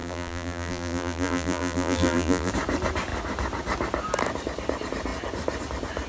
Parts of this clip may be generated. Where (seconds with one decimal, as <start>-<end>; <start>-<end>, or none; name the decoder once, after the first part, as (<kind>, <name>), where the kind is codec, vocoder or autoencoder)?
0.0-2.5 (vocoder, BigVGAN v2)